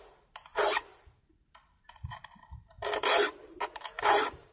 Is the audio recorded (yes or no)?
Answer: no